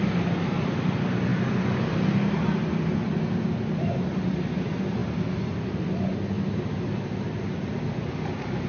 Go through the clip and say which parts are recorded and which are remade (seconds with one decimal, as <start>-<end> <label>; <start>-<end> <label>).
0.0-8.7 recorded